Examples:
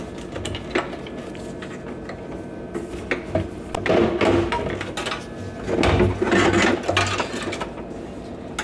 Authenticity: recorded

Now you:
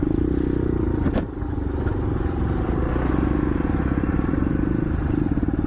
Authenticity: recorded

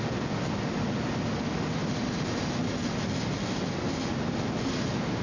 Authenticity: recorded